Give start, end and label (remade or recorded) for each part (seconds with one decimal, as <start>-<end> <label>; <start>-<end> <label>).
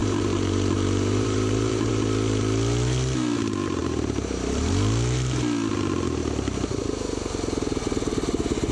0.0-1.9 remade; 1.9-3.8 recorded; 3.8-4.7 remade; 4.7-8.7 recorded